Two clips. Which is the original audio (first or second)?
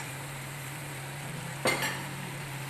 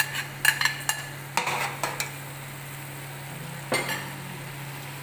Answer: second